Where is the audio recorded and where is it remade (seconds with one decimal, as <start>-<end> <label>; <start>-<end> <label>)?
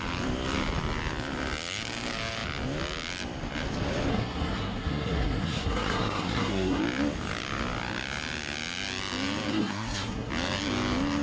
0.0-4.1 recorded; 4.1-6.8 remade; 6.8-9.5 recorded; 9.5-10.3 remade; 10.3-11.2 recorded